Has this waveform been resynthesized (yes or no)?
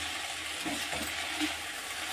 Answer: no